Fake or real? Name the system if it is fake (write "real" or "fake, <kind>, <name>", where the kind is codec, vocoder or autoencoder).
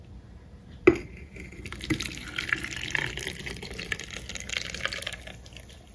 real